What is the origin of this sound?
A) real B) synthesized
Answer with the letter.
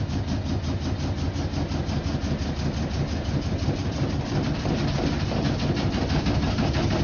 A